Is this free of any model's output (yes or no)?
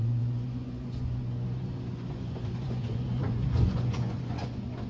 no